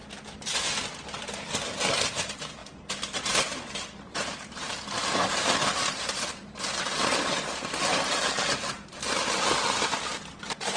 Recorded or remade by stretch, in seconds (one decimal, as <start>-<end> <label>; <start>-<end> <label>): 0.0-2.6 recorded; 2.6-6.6 remade; 6.6-10.8 recorded